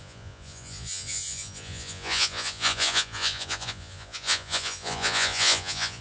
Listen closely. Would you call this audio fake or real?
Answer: fake